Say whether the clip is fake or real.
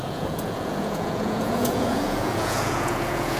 fake